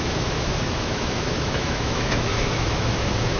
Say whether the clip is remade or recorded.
remade